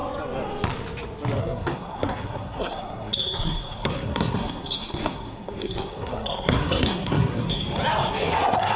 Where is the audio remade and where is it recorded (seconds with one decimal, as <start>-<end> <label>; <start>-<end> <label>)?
0.0-1.4 recorded; 1.4-7.6 remade; 7.6-8.1 recorded; 8.1-8.8 remade